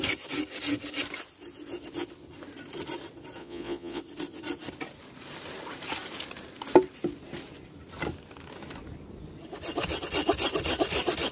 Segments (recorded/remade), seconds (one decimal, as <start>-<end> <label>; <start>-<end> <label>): 0.0-3.4 recorded; 3.4-4.0 remade; 4.0-11.3 recorded